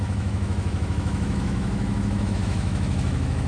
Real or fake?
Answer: fake